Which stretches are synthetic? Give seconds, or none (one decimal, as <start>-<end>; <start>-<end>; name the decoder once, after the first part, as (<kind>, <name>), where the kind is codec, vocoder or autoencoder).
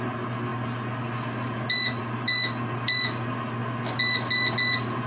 none